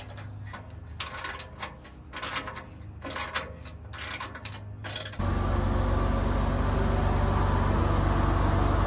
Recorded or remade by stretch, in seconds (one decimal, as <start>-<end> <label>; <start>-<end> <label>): 0.0-8.9 recorded